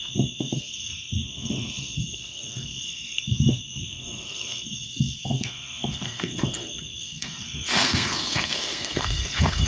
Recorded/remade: remade